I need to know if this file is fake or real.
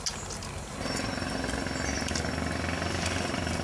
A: real